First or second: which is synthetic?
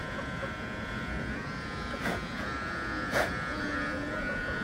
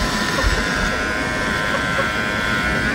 first